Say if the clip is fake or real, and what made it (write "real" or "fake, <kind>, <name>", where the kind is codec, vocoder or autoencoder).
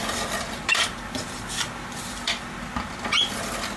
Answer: real